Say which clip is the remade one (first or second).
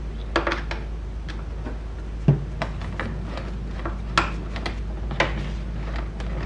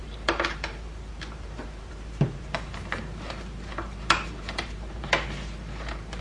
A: second